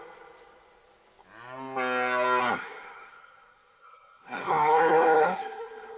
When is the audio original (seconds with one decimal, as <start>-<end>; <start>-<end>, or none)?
0.0-2.4